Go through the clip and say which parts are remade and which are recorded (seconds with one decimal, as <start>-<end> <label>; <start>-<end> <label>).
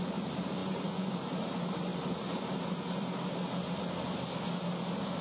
0.0-0.6 recorded; 0.6-1.1 remade; 1.1-5.2 recorded